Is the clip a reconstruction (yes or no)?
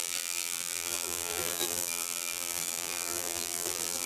yes